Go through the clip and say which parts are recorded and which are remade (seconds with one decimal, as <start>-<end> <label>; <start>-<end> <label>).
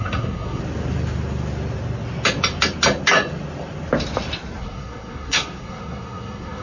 0.0-0.6 remade; 0.6-4.6 recorded; 4.6-6.6 remade